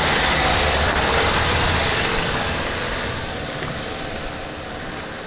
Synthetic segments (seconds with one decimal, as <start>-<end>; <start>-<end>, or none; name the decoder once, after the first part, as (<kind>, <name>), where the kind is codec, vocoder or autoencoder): 0.0-5.3 (vocoder, BigVGAN v2)